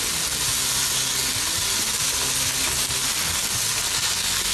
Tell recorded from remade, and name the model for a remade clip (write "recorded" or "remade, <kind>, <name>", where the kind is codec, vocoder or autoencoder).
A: recorded